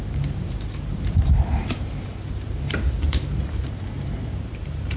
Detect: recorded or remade remade